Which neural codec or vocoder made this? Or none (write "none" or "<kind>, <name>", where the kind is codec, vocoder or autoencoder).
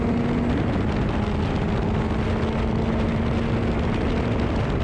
none